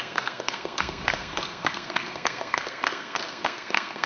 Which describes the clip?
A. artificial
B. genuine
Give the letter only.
A